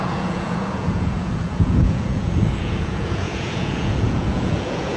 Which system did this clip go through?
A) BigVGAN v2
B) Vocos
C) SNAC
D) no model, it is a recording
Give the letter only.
B